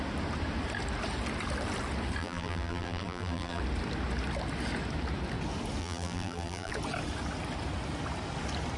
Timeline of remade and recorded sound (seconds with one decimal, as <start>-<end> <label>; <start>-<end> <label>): 0.0-2.2 recorded; 2.2-3.6 remade; 3.6-5.8 recorded; 5.8-6.7 remade; 6.7-8.8 recorded